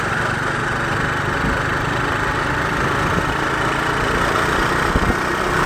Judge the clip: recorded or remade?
recorded